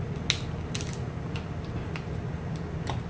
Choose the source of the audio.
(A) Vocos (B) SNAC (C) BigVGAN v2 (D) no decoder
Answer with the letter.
D